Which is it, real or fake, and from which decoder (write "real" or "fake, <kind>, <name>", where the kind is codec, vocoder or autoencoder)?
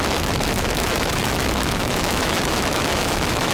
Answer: fake, autoencoder, DAC-VAE